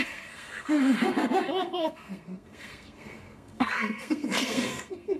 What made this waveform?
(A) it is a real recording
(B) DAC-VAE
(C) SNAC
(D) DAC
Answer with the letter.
C